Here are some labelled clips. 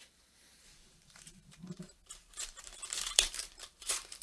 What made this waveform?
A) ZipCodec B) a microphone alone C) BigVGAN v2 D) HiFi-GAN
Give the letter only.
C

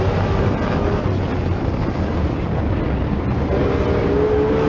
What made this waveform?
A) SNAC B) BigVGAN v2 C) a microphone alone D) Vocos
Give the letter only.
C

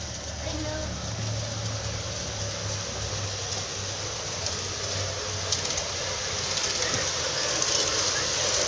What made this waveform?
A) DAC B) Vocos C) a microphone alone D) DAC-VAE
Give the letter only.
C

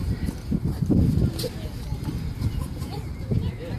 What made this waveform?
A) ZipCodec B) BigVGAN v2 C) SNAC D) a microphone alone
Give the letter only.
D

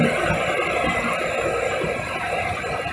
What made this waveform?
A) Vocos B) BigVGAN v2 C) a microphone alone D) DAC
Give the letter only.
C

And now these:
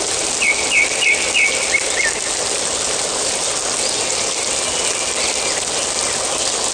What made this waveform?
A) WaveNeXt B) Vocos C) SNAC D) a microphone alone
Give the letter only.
D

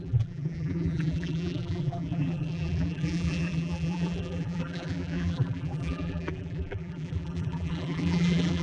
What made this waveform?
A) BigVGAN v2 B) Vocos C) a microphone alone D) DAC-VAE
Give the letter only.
A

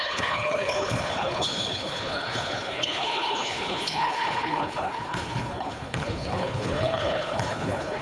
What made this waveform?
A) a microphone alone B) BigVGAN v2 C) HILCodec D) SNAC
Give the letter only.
C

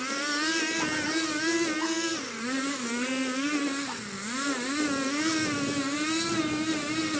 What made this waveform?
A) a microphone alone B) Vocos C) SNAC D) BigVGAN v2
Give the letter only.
A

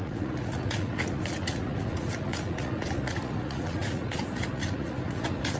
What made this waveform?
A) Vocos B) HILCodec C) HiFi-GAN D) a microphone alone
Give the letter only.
A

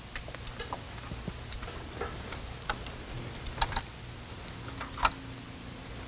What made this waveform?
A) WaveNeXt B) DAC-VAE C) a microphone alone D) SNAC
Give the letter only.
C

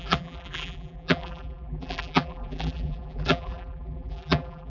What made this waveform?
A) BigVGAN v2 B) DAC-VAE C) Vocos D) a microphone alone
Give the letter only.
A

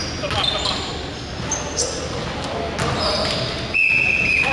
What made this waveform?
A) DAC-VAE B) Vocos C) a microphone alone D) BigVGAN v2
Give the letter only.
C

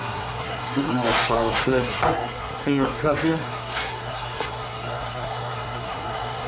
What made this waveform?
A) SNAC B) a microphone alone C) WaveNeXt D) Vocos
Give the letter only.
A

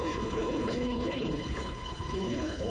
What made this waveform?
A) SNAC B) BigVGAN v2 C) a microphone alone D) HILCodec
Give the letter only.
D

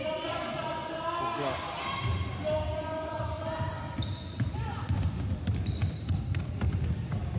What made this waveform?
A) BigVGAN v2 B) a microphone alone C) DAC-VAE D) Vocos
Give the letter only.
B